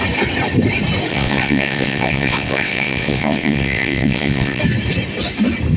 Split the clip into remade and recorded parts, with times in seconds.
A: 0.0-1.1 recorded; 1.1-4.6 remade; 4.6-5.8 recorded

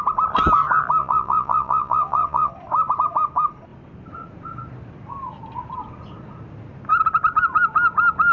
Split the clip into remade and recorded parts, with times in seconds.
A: 0.0-1.0 recorded; 1.0-2.5 remade; 2.5-8.3 recorded

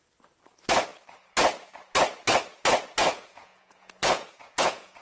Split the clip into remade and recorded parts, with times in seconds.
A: 0.0-3.0 recorded; 3.0-5.0 remade

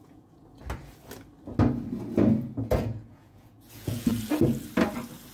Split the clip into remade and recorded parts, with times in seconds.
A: 0.0-0.6 remade; 0.6-2.8 recorded; 2.8-4.1 remade; 4.1-5.3 recorded

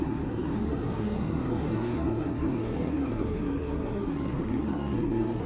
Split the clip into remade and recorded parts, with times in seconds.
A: 0.0-5.5 remade